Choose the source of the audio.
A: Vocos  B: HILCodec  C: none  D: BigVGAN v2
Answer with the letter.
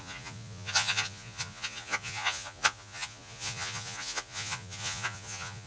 A